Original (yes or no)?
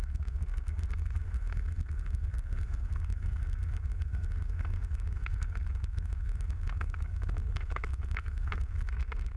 no